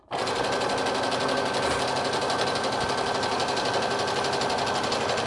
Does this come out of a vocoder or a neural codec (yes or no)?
no